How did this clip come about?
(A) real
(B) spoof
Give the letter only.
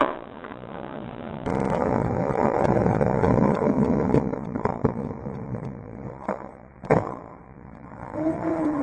B